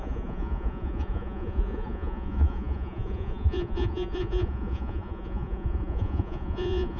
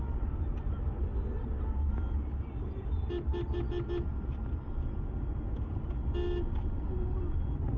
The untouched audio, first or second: second